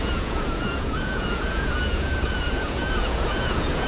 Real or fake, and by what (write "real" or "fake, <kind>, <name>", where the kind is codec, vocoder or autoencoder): fake, vocoder, Vocos